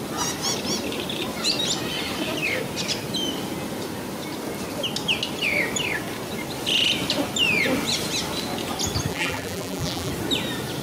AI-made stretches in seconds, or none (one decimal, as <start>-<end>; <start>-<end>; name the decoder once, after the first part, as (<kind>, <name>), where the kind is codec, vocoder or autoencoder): 9.1-10.1 (vocoder, BigVGAN v2)